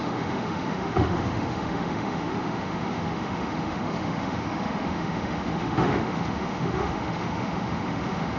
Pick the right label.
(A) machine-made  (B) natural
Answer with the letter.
A